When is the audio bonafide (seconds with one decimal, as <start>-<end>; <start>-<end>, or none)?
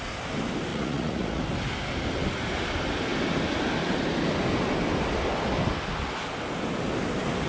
0.0-0.7; 1.4-7.5